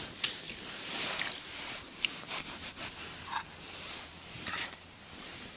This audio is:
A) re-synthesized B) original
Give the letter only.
A